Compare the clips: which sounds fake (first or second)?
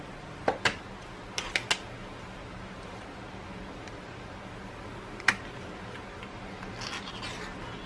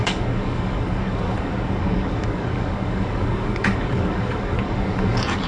second